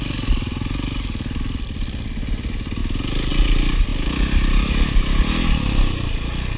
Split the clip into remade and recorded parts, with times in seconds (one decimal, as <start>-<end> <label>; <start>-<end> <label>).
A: 0.0-6.6 recorded

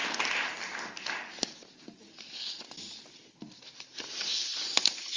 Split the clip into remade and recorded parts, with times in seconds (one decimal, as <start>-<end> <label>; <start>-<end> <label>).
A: 0.0-5.2 recorded

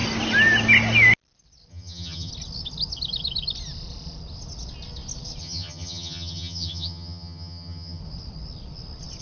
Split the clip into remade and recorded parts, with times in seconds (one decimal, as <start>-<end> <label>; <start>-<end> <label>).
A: 0.0-1.7 recorded; 1.7-2.3 remade; 2.3-5.4 recorded; 5.4-8.0 remade; 8.0-9.2 recorded